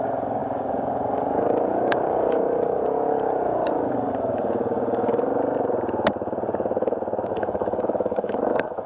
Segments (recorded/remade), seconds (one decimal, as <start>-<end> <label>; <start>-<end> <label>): 0.0-5.3 remade; 5.3-7.3 recorded; 7.3-8.9 remade